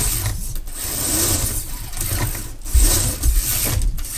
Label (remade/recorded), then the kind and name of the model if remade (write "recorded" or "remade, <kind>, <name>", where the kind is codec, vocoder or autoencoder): recorded